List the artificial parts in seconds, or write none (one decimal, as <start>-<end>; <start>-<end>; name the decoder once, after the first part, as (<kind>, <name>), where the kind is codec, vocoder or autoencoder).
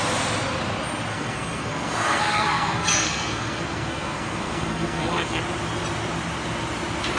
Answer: 1.1-5.4 (codec, SNAC)